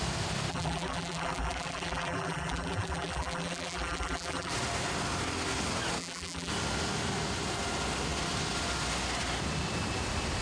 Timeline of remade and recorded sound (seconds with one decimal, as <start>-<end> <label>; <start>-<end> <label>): 0.0-0.5 recorded; 0.5-4.5 remade; 4.5-6.0 recorded; 6.0-6.5 remade; 6.5-10.4 recorded